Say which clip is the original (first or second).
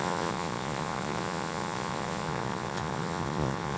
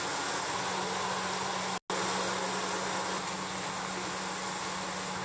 second